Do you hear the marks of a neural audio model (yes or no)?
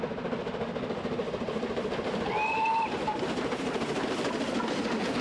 no